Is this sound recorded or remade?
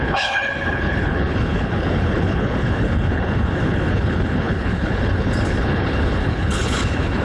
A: remade